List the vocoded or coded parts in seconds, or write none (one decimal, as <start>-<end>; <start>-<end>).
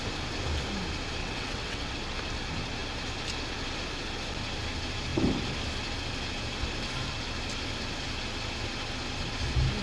1.2-1.9